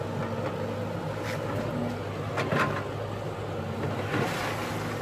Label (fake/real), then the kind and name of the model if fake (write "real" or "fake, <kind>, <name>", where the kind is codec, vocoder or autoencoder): real